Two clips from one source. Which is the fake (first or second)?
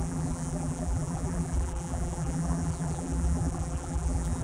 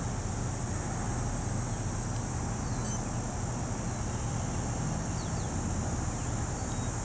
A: first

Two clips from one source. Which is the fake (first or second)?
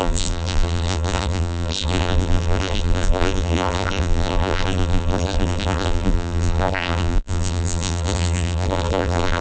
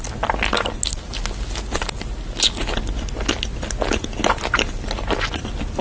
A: first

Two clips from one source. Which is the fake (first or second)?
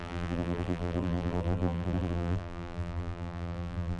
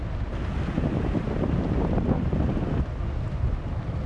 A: first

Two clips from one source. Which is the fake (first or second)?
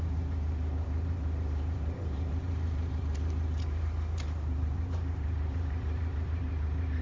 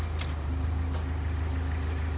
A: first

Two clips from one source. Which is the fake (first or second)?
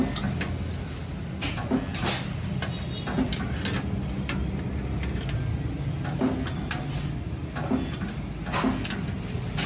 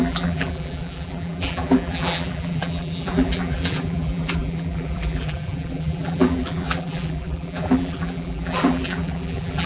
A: second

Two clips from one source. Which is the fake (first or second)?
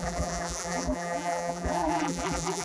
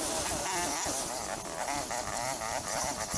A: first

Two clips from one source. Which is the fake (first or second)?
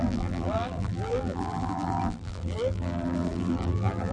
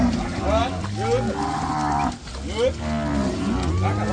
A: first